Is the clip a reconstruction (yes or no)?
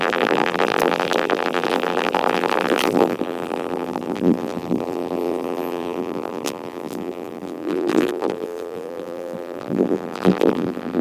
yes